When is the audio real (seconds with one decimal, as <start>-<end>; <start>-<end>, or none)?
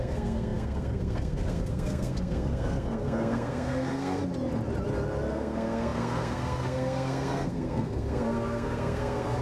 4.2-5.3